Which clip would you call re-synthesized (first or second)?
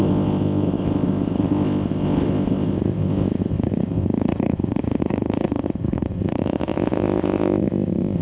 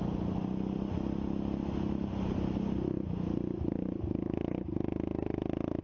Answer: first